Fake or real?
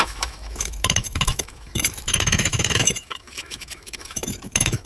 fake